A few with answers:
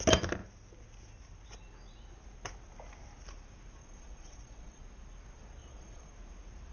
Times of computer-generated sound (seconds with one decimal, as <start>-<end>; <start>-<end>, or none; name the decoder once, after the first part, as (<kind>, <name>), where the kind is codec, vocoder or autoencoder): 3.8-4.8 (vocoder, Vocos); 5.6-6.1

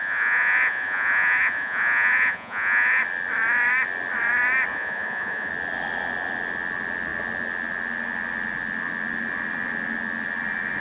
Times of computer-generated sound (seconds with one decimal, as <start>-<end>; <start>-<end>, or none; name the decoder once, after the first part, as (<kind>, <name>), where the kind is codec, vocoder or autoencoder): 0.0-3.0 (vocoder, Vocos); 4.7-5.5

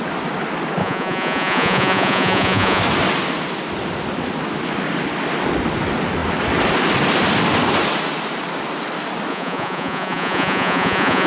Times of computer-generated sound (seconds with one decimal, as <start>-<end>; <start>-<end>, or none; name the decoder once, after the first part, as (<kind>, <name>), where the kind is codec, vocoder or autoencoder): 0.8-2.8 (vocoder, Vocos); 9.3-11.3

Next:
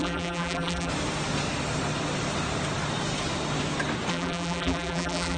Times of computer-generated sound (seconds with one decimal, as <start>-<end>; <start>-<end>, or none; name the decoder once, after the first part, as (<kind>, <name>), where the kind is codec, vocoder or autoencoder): 0.0-0.9 (vocoder, BigVGAN v2); 4.1-5.4